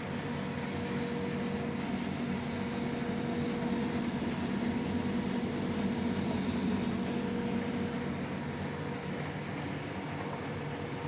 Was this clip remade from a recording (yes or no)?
no